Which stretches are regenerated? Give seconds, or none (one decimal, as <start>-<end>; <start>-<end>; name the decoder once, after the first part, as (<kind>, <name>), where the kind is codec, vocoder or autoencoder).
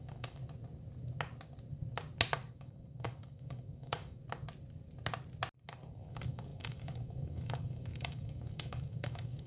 0.0-0.4 (codec, DAC); 2.5-4.2; 5.9-9.5